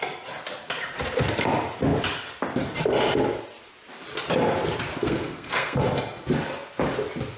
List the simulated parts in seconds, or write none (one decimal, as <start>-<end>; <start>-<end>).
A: 5.0-5.8